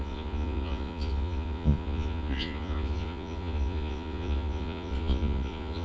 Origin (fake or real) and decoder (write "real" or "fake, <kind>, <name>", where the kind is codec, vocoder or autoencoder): fake, vocoder, Vocos